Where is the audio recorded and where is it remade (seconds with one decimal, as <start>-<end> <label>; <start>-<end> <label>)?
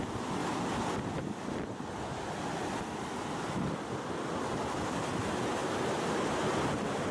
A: 0.0-7.1 recorded